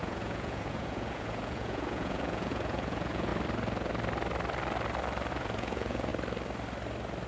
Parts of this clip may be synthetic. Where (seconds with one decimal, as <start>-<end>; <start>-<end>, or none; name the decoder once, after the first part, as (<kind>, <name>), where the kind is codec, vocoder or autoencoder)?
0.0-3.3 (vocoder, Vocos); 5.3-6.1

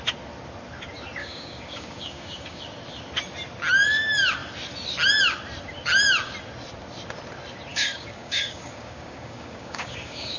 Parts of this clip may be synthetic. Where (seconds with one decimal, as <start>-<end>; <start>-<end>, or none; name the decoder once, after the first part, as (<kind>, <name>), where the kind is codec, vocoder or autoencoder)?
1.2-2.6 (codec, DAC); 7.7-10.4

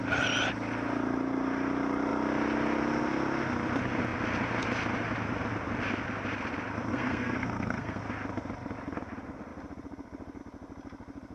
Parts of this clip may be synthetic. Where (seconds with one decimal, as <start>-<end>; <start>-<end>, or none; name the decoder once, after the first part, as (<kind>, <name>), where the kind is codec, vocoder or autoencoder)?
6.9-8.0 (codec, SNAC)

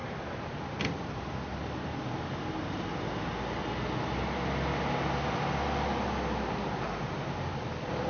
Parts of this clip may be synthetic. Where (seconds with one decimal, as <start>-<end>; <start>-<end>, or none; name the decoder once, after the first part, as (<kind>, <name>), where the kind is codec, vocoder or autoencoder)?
none

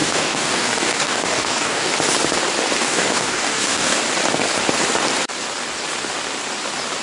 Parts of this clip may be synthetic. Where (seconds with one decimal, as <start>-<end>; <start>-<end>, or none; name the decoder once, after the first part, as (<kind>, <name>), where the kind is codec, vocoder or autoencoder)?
0.0-1.9 (codec, DAC); 2.8-4.0

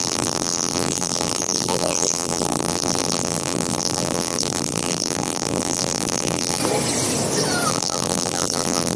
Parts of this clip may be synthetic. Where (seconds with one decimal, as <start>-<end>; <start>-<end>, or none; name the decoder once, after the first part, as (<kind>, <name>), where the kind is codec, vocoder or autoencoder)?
0.0-6.6 (vocoder, BigVGAN v2); 7.7-9.0

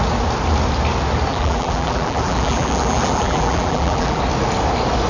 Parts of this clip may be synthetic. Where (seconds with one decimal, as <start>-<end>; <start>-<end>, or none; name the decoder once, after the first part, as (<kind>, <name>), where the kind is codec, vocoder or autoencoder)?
1.3-4.2 (vocoder, BigVGAN v2)